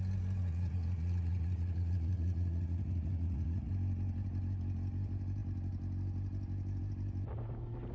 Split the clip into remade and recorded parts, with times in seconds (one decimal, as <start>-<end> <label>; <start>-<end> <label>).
0.0-0.4 recorded; 0.4-3.7 remade; 3.7-7.9 recorded